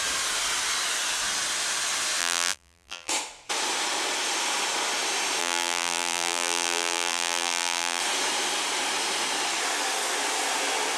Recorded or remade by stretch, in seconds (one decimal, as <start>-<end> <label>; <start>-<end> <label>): 0.0-2.2 recorded; 2.2-3.1 remade; 3.1-5.4 recorded; 5.4-8.0 remade; 8.0-11.0 recorded